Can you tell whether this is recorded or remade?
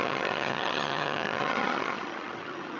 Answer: remade